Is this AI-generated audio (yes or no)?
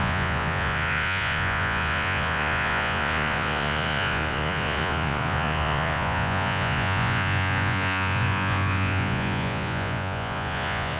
yes